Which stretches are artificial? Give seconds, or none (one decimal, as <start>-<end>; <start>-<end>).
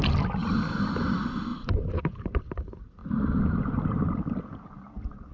1.5-2.5